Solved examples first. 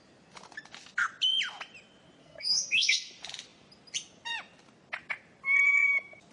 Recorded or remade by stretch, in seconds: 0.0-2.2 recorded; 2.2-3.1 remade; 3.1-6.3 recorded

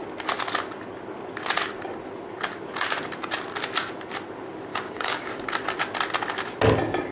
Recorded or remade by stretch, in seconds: 0.0-4.7 recorded; 4.7-5.3 remade; 5.3-7.1 recorded